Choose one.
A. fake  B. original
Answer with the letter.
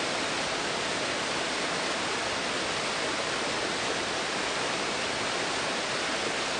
B